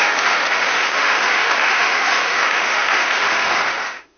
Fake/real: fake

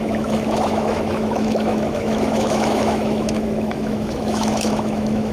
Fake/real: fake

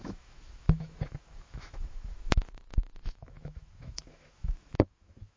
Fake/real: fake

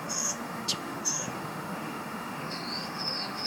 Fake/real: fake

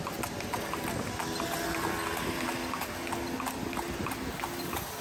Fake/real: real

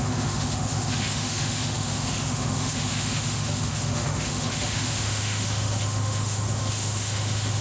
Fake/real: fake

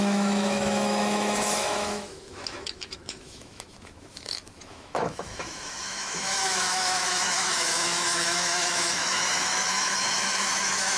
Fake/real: fake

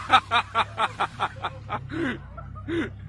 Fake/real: real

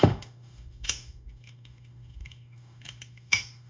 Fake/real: fake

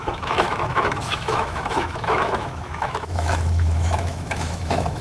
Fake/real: fake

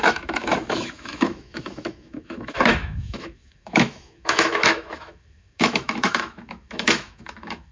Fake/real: fake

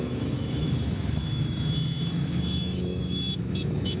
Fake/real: fake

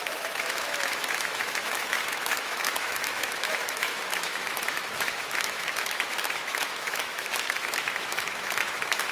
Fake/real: fake